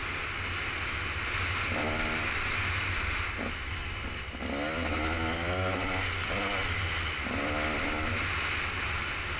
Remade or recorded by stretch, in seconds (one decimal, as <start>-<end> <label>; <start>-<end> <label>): 0.0-9.4 recorded